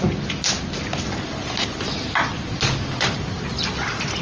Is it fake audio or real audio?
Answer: real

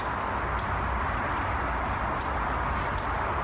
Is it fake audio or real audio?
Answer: real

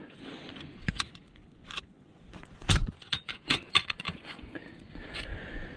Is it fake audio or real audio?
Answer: fake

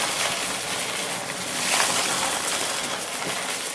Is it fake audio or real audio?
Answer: real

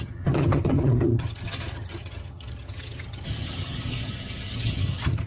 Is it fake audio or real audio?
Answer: fake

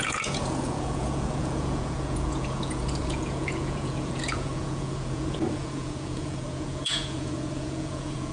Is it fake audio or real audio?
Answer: fake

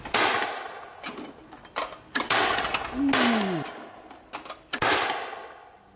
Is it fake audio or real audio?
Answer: real